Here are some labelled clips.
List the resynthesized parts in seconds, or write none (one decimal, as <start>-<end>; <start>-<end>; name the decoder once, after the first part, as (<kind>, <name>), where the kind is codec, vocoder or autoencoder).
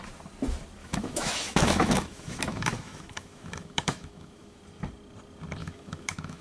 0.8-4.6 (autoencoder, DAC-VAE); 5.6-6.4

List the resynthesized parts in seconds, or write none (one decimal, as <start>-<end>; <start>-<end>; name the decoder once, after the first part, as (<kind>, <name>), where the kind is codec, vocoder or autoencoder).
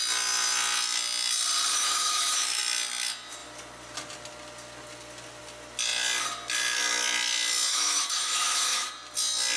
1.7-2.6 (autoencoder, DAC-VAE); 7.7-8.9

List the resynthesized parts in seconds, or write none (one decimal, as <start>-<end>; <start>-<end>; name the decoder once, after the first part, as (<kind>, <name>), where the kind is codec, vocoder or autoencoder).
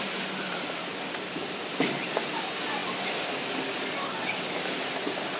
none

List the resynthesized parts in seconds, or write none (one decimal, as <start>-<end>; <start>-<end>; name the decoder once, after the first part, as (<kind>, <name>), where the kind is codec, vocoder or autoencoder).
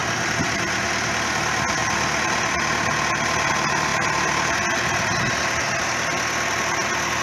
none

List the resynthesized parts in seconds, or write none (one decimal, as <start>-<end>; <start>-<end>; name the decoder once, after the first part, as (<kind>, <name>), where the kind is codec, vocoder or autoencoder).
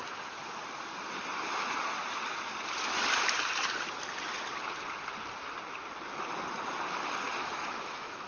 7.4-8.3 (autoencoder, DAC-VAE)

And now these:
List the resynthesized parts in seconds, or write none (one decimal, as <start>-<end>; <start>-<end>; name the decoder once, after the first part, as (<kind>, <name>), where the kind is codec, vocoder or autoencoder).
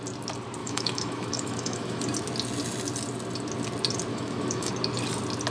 0.6-2.0 (autoencoder, DAC-VAE); 4.1-4.7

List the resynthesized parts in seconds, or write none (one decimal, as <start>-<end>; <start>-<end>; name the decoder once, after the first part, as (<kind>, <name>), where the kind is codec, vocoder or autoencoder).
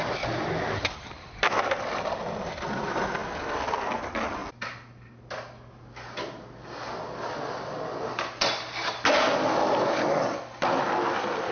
none